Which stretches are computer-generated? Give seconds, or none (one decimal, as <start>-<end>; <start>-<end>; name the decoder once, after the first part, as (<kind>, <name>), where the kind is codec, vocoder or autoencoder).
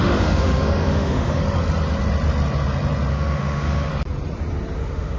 0.0-1.4 (autoencoder, DAC-VAE); 3.1-3.9; 4.8-5.2